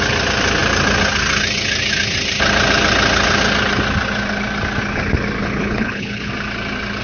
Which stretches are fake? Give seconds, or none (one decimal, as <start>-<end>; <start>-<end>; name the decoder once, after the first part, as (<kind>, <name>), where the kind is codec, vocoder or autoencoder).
5.4-6.3 (codec, HILCodec)